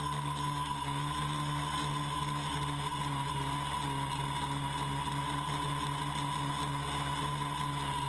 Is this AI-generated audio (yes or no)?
no